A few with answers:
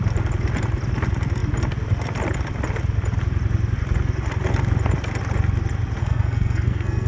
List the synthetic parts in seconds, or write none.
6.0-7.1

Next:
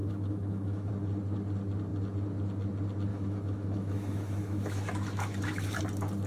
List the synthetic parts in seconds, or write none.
0.0-0.9; 3.1-5.8